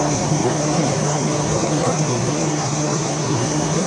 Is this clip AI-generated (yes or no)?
yes